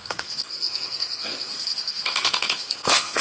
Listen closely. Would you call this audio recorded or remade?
remade